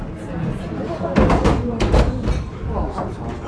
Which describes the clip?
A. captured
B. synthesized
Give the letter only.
A